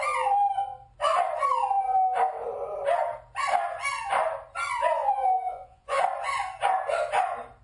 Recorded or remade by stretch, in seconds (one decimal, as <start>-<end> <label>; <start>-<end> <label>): 0.0-5.0 recorded; 5.0-6.0 remade; 6.0-7.6 recorded